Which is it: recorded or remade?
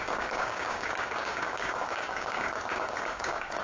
remade